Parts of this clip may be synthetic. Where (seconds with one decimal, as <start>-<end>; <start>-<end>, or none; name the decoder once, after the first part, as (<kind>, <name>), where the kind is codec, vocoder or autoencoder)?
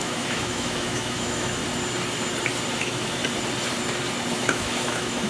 0.0-1.6 (autoencoder, DAC-VAE); 2.8-3.2; 4.3-5.3